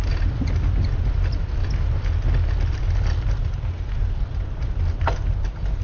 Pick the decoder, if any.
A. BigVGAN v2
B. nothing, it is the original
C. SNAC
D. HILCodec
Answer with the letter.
B